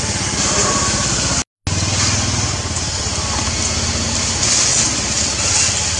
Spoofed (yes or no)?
no